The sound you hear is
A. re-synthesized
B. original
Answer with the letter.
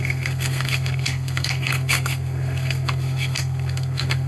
A